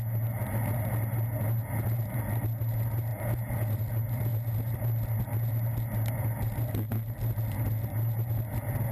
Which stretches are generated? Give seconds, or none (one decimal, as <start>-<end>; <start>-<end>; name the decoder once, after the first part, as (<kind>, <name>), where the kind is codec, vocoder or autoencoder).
3.1-3.8 (vocoder, BigVGAN v2)